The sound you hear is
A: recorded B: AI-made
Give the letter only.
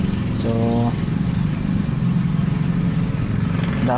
A